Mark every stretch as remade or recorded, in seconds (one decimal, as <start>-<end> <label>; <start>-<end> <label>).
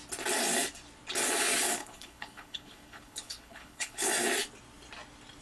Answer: 0.0-1.8 recorded; 1.8-4.1 remade; 4.1-5.4 recorded